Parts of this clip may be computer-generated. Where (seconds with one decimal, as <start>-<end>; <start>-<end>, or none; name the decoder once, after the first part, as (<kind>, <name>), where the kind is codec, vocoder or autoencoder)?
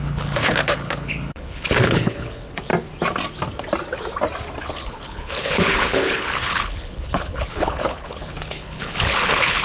0.0-2.7 (codec, HILCodec); 4.6-9.6